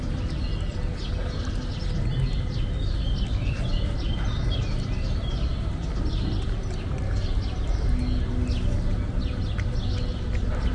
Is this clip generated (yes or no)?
no